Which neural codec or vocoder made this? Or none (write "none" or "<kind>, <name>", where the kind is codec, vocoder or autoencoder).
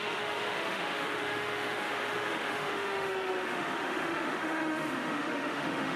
autoencoder, DAC-VAE